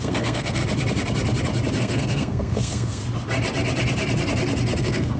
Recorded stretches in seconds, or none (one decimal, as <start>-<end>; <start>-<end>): 0.6-1.8; 3.0-4.8